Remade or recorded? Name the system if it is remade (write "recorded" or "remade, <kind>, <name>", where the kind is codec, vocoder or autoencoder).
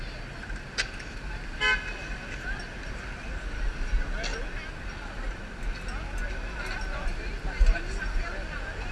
recorded